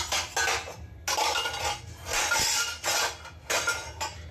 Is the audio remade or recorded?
recorded